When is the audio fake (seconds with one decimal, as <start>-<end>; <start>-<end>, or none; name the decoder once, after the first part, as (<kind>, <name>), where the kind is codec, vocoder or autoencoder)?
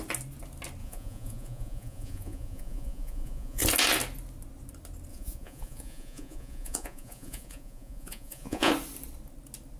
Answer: 0.8-3.6 (vocoder, Vocos); 5.1-8.7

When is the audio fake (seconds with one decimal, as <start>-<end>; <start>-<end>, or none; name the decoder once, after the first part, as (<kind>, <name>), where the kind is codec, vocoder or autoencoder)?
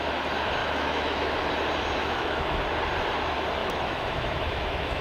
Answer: 0.6-1.5 (autoencoder, DAC-VAE); 2.0-2.6; 3.6-5.0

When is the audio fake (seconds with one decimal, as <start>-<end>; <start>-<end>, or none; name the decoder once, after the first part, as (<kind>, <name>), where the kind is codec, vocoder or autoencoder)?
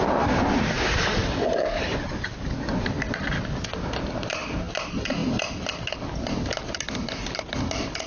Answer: none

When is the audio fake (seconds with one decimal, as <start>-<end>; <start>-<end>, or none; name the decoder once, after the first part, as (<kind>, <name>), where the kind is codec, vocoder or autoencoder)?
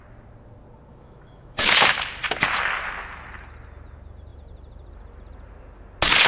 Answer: 0.9-1.7 (autoencoder, DAC-VAE)